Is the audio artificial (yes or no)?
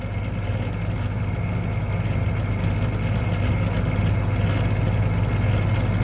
no